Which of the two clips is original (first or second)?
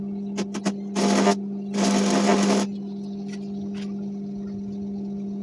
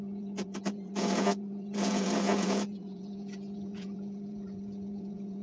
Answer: first